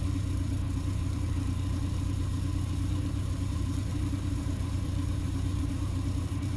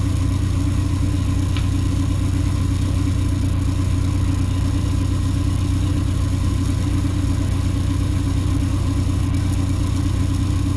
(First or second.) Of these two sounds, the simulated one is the first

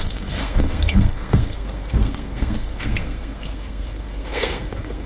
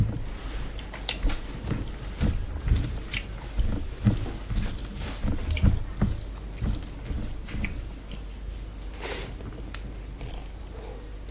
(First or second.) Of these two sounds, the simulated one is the first